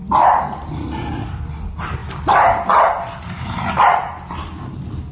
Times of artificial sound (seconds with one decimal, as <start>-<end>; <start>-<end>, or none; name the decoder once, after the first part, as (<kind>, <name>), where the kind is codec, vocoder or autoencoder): 1.2-2.0 (vocoder, BigVGAN v2)